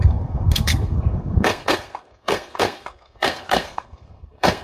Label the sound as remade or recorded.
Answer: remade